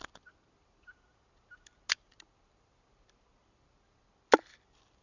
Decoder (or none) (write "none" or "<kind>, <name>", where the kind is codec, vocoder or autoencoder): none